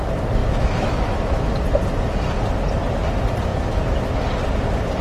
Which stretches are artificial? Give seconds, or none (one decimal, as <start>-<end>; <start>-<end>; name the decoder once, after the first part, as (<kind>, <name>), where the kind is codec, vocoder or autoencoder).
0.4-1.5 (autoencoder, DAC-VAE); 3.5-4.0